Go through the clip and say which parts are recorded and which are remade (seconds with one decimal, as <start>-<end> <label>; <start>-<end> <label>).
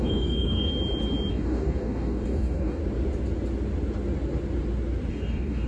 0.0-0.7 remade; 0.7-1.3 recorded; 1.3-2.8 remade; 2.8-5.1 recorded; 5.1-5.7 remade